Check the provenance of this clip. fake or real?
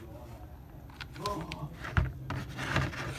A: real